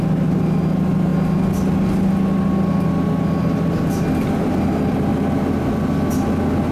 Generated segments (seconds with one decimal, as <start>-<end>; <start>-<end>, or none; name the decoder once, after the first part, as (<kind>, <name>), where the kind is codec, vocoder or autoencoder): none